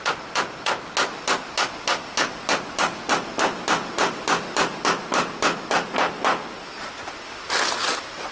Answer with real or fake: real